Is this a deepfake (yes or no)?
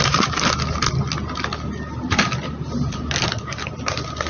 no